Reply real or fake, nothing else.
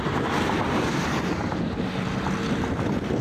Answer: real